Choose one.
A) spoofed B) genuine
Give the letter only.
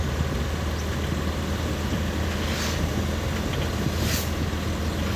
B